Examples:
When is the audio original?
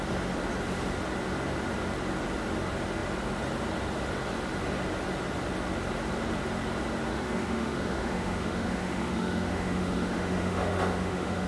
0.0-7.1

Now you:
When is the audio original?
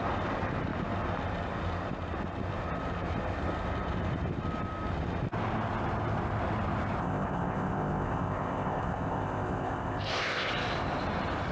0.0-7.0; 10.5-11.5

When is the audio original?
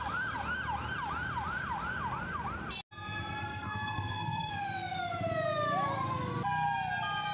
0.0-3.4; 4.5-7.3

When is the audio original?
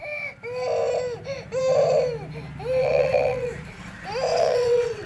0.0-2.8; 3.5-4.3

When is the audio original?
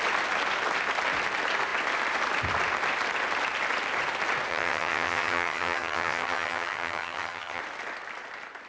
0.0-4.5; 7.6-8.7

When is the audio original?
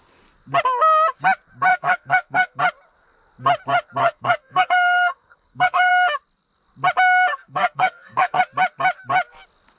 0.0-1.7; 2.6-4.0; 5.9-7.3; 8.4-9.8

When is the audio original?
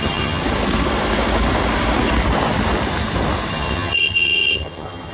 0.4-3.5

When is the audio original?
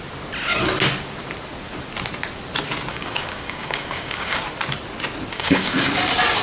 0.0-2.9; 4.4-5.3; 5.9-6.4